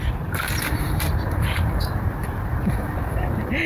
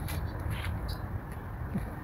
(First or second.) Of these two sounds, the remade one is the first